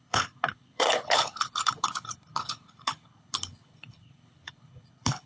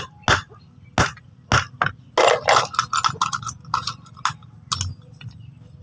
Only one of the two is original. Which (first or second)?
second